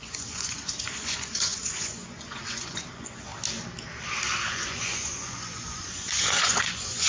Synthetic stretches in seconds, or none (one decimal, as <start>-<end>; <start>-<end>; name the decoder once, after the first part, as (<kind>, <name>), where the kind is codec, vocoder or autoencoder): 0.0-3.3 (vocoder, Vocos); 4.5-7.1